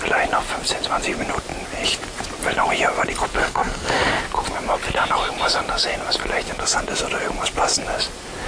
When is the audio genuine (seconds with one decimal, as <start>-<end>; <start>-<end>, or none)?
0.0-3.4; 4.2-8.5